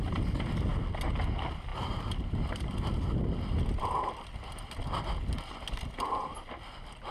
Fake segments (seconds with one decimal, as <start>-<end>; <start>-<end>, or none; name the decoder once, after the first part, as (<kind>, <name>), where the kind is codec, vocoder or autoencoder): none